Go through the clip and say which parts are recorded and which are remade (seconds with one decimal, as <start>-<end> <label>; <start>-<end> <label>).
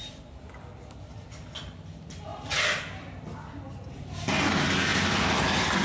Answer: 0.0-5.8 recorded